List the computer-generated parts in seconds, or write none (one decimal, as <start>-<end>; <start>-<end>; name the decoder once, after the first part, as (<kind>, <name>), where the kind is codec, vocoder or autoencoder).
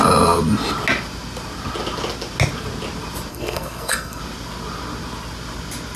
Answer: 3.3-4.2 (codec, SNAC)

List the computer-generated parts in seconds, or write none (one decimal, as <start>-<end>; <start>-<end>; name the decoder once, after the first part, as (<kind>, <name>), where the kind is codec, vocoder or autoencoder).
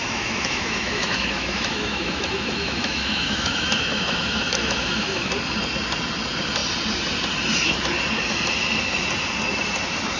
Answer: 0.0-5.3 (autoencoder, DAC-VAE)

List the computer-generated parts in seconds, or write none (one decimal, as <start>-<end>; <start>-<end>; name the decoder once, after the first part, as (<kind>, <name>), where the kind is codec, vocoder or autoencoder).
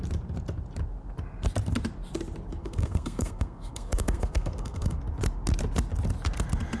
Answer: 2.6-5.0 (codec, SNAC)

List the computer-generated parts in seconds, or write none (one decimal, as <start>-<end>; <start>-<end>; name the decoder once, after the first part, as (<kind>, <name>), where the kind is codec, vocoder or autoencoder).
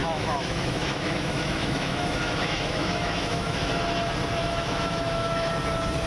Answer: 0.0-3.7 (autoencoder, DAC-VAE); 4.4-5.5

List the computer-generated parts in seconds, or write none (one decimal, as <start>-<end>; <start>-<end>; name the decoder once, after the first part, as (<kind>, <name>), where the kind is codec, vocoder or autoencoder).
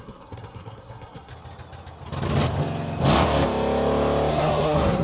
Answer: 0.0-1.3 (codec, SNAC); 4.3-5.0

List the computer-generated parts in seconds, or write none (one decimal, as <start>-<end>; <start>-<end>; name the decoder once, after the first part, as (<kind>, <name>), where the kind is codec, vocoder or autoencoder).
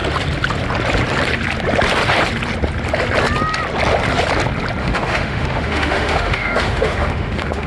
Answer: 4.8-7.7 (autoencoder, DAC-VAE)